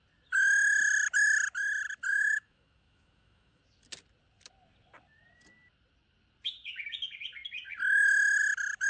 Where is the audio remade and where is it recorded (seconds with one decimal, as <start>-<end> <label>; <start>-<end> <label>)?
0.0-2.1 recorded; 2.1-3.6 remade; 3.6-8.9 recorded